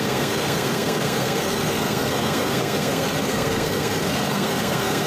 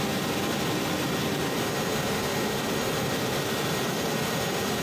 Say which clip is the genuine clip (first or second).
second